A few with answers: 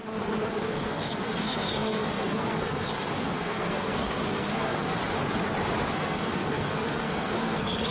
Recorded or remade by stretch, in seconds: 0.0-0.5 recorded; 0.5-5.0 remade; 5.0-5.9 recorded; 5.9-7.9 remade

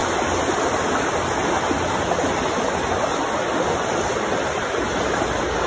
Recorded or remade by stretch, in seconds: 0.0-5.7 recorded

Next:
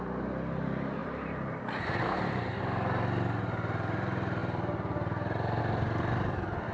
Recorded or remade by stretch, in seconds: 0.0-1.0 recorded; 1.0-2.6 remade; 2.6-6.7 recorded

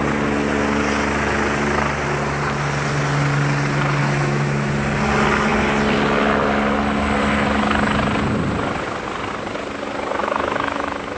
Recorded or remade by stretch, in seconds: 0.0-4.0 recorded; 4.0-4.7 remade; 4.7-10.2 recorded; 10.2-11.2 remade

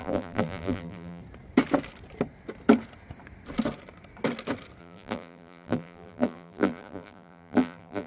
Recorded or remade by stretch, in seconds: 0.0-1.2 remade; 1.2-4.8 recorded; 4.8-8.1 remade

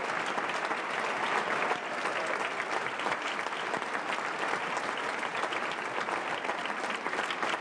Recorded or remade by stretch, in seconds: 0.0-7.6 recorded